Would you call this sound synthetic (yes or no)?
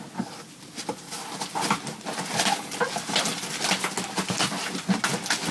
no